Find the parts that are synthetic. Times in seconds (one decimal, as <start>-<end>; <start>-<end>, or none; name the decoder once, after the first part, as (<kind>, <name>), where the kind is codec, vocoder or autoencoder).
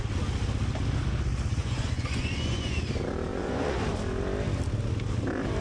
1.6-2.8 (vocoder, Vocos); 3.3-3.8